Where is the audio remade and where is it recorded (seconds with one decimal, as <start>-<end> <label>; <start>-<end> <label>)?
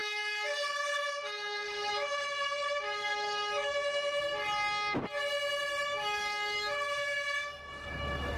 0.0-4.2 remade; 4.2-5.9 recorded; 5.9-8.4 remade